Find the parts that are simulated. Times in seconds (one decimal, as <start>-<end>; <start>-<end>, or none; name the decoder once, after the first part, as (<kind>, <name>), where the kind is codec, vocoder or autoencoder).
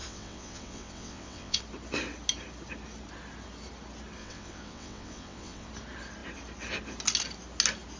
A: 0.0-1.6 (vocoder, WaveNeXt); 4.2-5.7